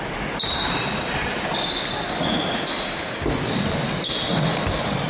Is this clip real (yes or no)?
yes